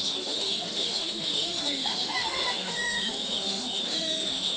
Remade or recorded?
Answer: remade